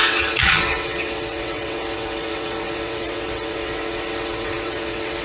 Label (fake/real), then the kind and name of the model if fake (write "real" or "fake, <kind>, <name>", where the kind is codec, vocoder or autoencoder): fake, vocoder, WaveNeXt